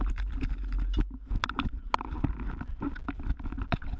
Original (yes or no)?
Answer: yes